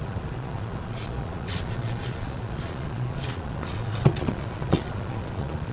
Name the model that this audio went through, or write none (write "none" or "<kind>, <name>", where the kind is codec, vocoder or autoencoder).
vocoder, Vocos